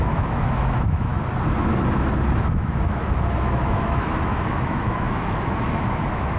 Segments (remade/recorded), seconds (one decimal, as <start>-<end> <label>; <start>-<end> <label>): 0.0-1.1 remade; 1.1-2.4 recorded; 2.4-6.4 remade